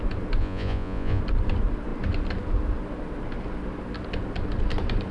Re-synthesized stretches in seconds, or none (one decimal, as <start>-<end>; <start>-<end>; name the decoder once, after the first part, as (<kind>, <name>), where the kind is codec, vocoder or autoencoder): 0.4-1.2 (vocoder, Vocos)